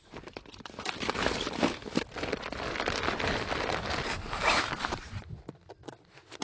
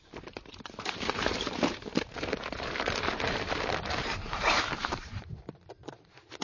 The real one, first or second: first